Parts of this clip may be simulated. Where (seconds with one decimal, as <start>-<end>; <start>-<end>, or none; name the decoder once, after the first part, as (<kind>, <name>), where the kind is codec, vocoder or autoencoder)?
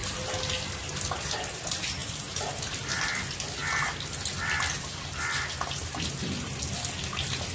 none